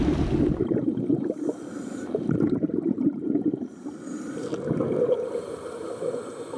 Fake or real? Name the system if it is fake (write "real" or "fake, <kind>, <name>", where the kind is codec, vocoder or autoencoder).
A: real